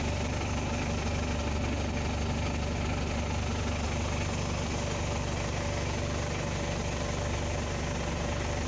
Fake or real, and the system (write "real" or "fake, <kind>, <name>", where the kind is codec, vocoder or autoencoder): real